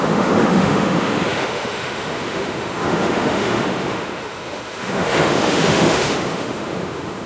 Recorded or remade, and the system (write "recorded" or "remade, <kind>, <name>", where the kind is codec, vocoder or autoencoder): remade, autoencoder, DAC-VAE